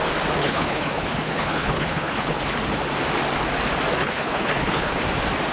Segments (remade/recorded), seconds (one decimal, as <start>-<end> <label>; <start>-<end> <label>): 0.0-0.4 recorded; 0.4-2.4 remade; 2.4-4.0 recorded; 4.0-5.0 remade; 5.0-5.5 recorded